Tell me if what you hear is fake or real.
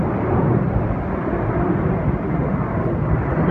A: real